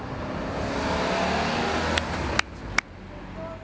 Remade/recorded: recorded